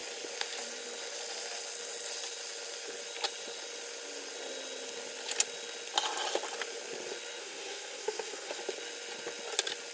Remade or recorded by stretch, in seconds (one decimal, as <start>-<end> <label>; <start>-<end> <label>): 0.0-7.4 recorded; 7.4-8.6 remade; 8.6-9.9 recorded